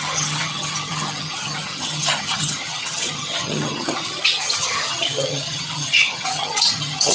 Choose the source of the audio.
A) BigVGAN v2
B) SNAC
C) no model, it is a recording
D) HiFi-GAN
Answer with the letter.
D